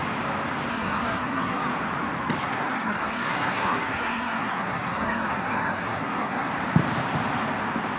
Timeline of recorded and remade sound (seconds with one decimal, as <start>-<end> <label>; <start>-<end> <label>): 0.0-0.7 recorded; 0.7-1.6 remade; 1.6-2.4 recorded; 2.4-6.5 remade; 6.5-8.0 recorded